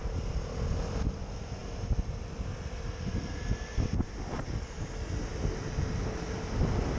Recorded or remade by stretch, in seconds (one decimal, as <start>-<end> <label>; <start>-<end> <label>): 0.0-7.0 recorded